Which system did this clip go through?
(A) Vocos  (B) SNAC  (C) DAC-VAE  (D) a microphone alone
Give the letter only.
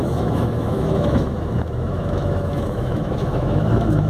C